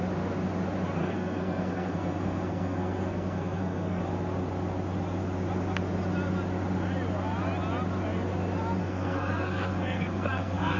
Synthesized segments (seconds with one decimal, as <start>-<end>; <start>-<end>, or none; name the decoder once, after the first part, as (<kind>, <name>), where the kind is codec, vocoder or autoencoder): 1.0-4.0 (codec, SNAC); 8.8-10.8